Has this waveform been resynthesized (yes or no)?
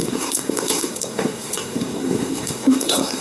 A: yes